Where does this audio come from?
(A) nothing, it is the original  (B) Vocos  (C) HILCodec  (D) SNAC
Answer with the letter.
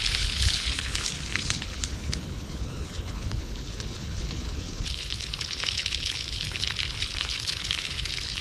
C